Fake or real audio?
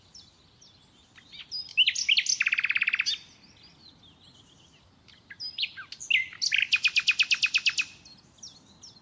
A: real